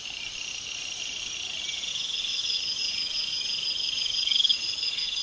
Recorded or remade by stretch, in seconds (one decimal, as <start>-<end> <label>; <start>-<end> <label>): 0.0-1.9 recorded; 1.9-5.2 remade